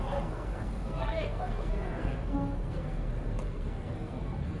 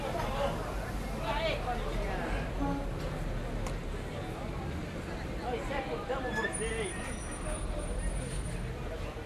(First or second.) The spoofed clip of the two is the first